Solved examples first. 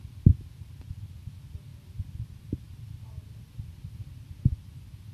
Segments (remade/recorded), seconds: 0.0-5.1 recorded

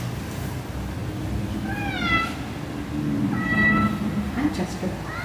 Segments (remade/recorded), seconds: 0.0-5.2 recorded

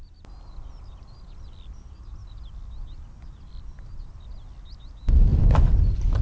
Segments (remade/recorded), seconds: 0.0-6.2 recorded

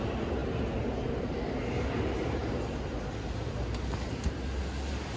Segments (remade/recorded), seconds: 0.0-5.2 recorded

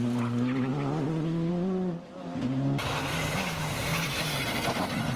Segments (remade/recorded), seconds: 0.0-0.7 recorded; 0.7-1.5 remade; 1.5-5.2 recorded